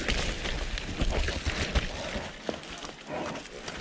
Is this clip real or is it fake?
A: real